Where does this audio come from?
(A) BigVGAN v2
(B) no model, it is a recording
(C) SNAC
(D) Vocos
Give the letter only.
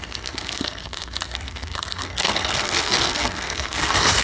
C